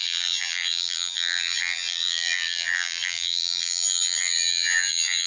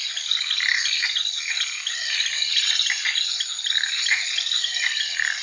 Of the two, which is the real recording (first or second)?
second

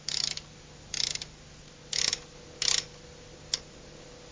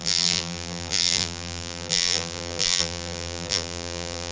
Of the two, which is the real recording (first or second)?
first